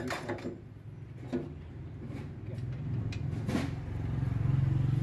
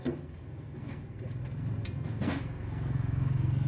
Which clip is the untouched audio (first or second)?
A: first